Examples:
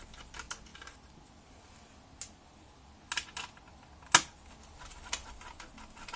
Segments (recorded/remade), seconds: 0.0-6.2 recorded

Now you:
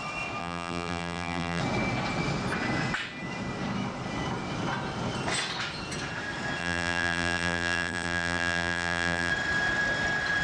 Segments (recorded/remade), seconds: 0.0-0.4 recorded; 0.4-1.6 remade; 1.6-6.6 recorded; 6.6-9.3 remade; 9.3-10.4 recorded

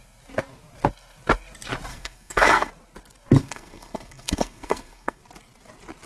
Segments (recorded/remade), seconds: 0.0-1.9 recorded; 1.9-2.7 remade; 2.7-3.4 recorded; 3.4-5.2 remade; 5.2-6.1 recorded

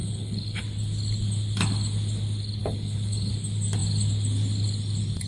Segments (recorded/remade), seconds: 0.0-0.6 remade; 0.6-2.6 recorded; 2.6-3.3 remade; 3.3-5.3 recorded

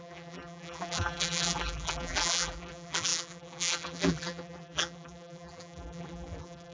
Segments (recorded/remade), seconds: 0.0-6.7 remade

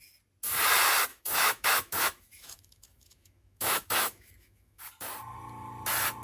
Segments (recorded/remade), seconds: 0.0-1.1 recorded; 1.1-4.8 remade; 4.8-6.2 recorded

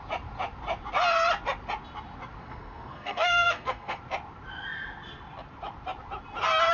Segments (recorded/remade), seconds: 0.0-2.4 recorded; 2.4-4.0 remade; 4.0-6.7 recorded